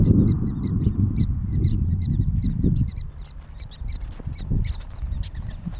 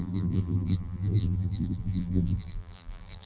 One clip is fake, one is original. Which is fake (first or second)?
second